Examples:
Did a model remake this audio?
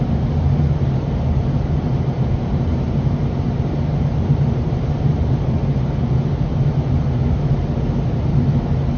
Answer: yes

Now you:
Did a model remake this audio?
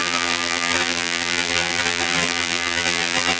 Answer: yes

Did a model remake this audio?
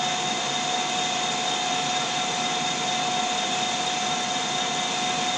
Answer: no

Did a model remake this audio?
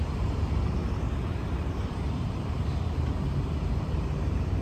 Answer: yes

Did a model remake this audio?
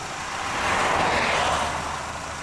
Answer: no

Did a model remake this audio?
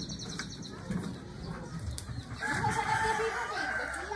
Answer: yes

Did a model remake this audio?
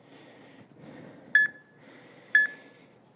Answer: no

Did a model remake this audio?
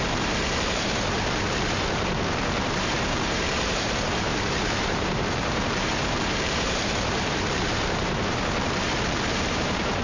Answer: yes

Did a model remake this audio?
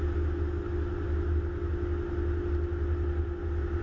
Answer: no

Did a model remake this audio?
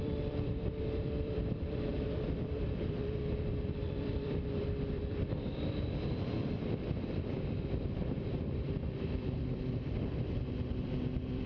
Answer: yes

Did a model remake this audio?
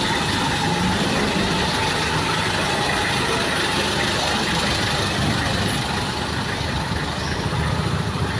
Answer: no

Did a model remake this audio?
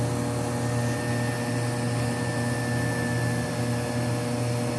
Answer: no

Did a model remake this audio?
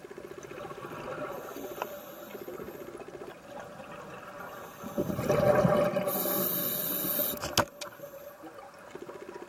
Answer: no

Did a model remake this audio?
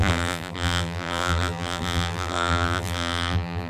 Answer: yes